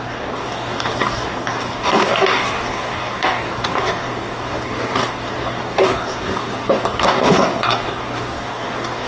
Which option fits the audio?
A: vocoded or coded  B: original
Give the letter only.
A